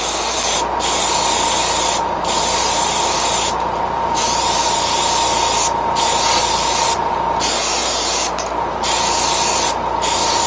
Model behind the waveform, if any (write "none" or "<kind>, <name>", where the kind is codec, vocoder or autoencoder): none